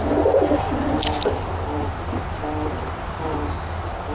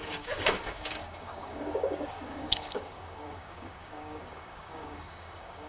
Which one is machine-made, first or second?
second